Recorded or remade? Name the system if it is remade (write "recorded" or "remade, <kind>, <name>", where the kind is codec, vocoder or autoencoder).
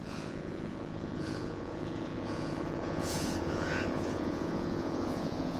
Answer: remade, vocoder, Vocos